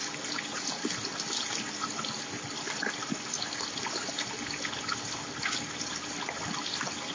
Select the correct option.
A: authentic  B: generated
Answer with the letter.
A